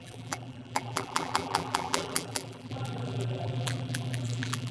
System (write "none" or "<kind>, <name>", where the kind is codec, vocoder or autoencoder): vocoder, BigVGAN v2